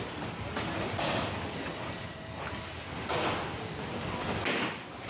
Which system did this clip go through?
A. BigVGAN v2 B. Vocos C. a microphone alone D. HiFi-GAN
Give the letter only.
C